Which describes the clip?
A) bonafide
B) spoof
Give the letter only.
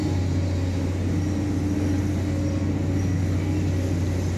A